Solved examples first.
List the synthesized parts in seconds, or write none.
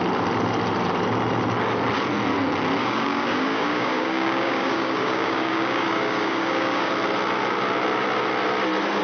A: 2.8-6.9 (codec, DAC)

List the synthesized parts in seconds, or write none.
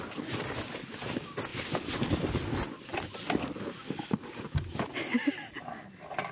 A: none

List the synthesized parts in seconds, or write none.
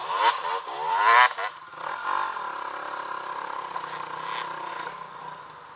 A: none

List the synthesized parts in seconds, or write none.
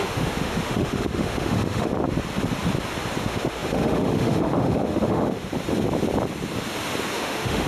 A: 0.0-1.9 (autoencoder, DAC-VAE); 3.2-5.5; 7.1-7.7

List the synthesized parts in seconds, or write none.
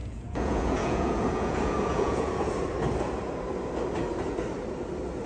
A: 0.0-2.5 (vocoder, Vocos)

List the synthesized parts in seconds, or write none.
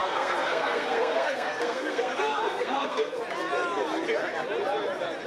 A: 0.0-3.2 (codec, SNAC)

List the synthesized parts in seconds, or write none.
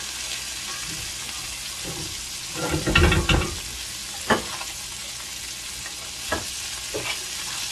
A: none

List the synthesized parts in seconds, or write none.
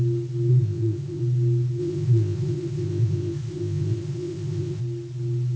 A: 0.5-1.2 (codec, ZipCodec); 1.8-4.8